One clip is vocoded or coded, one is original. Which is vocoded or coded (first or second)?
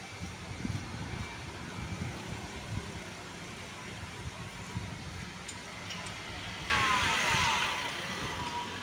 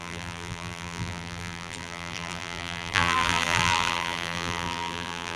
second